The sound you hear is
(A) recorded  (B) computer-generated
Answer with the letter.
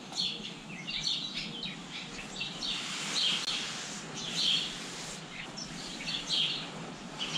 A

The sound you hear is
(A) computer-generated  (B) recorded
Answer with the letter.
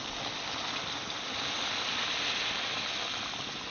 B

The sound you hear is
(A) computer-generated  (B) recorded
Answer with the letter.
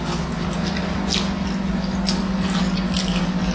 B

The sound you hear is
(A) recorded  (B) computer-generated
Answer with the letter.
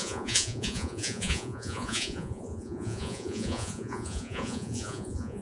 B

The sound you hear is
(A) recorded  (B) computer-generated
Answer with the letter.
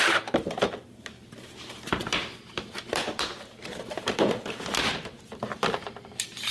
B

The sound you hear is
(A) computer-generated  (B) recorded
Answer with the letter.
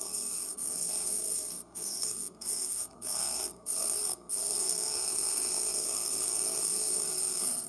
A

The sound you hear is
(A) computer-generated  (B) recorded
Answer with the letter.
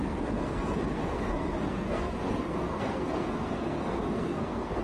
A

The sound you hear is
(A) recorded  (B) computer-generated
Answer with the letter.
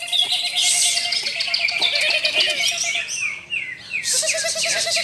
A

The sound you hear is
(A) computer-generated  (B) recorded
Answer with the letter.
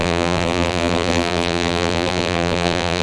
A